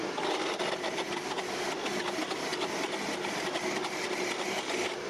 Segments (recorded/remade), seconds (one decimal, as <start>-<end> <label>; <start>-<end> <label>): 0.0-5.1 recorded